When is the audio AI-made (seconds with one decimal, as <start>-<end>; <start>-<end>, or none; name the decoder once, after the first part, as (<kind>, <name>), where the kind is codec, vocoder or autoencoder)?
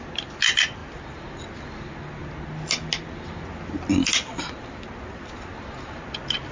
none